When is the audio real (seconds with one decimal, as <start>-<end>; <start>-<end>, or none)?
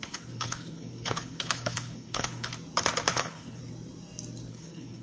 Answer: 2.5-3.1; 3.6-4.5